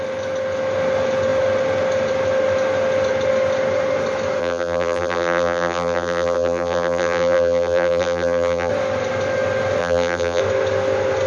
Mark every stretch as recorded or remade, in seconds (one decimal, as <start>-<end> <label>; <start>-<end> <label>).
0.0-4.4 recorded; 4.4-8.7 remade; 8.7-9.8 recorded; 9.8-10.4 remade; 10.4-11.3 recorded